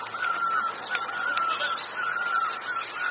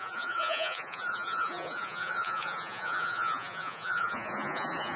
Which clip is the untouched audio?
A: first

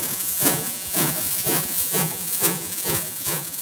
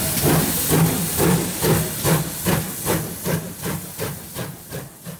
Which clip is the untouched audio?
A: second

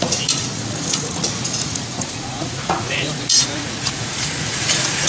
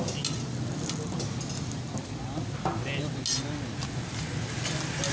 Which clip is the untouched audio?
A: second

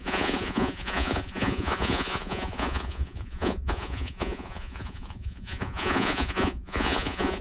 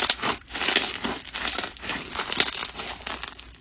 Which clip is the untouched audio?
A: second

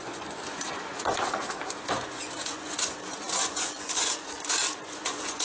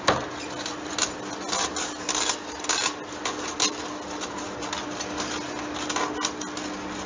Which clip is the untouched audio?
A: second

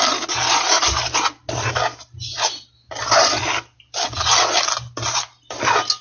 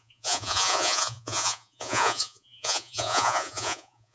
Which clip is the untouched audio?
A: first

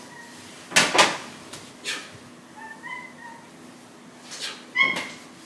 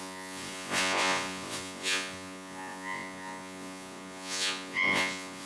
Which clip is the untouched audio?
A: first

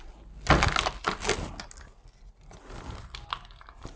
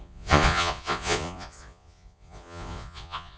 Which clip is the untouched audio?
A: first